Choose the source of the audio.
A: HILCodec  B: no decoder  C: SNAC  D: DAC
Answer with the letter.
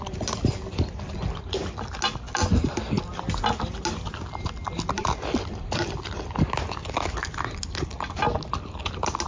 B